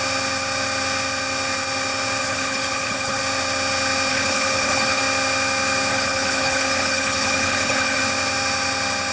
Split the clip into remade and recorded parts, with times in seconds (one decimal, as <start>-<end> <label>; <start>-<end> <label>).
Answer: 0.0-2.2 recorded; 2.2-3.2 remade; 3.2-4.1 recorded; 4.1-5.0 remade; 5.0-5.9 recorded; 5.9-8.0 remade; 8.0-9.1 recorded